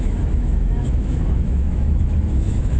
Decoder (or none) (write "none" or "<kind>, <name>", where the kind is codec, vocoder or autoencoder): autoencoder, DAC-VAE